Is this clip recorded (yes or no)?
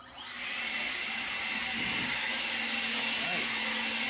yes